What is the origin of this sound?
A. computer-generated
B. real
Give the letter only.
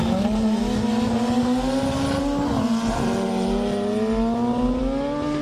B